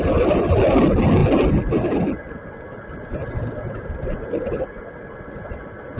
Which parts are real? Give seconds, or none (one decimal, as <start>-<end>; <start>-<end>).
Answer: 0.0-6.0

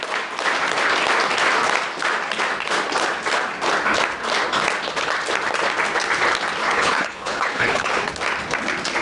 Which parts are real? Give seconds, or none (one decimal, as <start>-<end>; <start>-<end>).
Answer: 0.0-6.6; 7.9-9.0

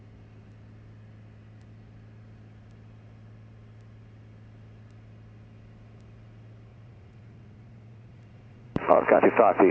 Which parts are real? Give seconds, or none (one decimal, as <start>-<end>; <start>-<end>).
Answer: 0.0-6.7; 9.2-9.7

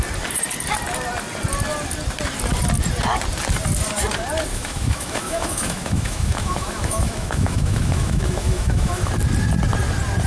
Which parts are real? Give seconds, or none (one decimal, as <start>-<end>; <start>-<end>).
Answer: 0.0-4.5; 9.1-10.3

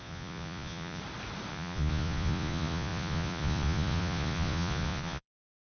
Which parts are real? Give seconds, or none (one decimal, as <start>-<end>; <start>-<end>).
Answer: 1.0-1.5